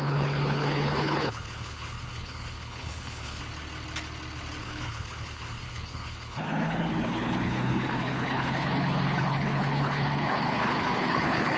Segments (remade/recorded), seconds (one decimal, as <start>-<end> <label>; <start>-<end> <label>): 0.0-3.4 remade; 3.4-4.6 recorded; 4.6-11.6 remade

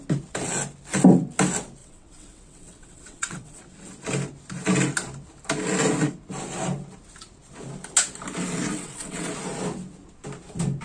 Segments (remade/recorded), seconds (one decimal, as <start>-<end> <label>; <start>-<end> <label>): 0.0-1.8 recorded; 1.8-3.6 remade; 3.6-8.7 recorded; 8.7-9.3 remade; 9.3-10.8 recorded

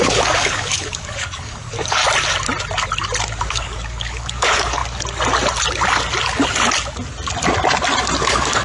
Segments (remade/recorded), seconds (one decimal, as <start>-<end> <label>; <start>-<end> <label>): 0.0-2.0 remade; 2.0-3.4 recorded; 3.4-4.8 remade; 4.8-8.2 recorded; 8.2-8.6 remade